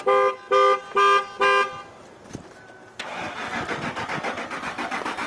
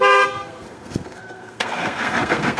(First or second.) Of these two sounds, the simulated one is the second